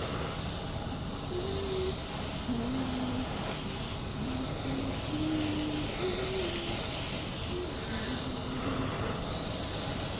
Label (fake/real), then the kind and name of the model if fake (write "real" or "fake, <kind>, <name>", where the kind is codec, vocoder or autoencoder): real